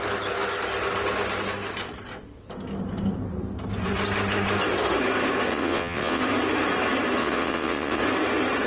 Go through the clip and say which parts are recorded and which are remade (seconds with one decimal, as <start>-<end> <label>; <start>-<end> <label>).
0.0-5.5 recorded; 5.5-6.2 remade; 6.2-7.2 recorded; 7.2-8.0 remade; 8.0-8.7 recorded